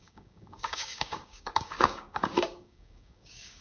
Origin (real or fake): fake